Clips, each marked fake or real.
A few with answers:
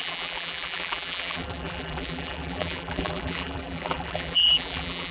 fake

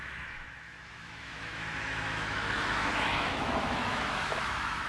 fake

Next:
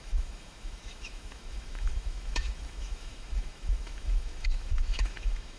fake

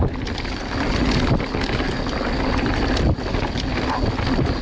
real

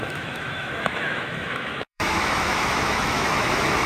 fake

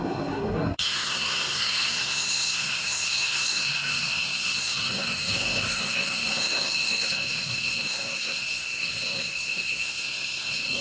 fake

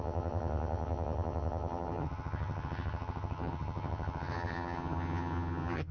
fake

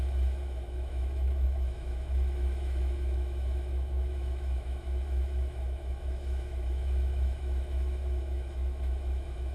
fake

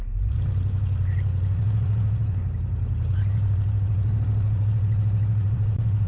fake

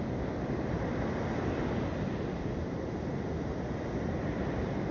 real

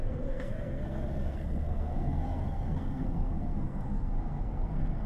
fake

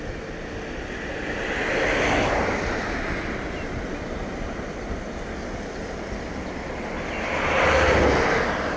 real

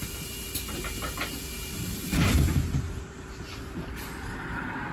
fake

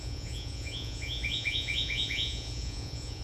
fake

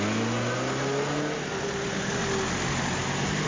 real